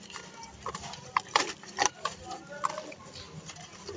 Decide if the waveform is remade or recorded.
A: recorded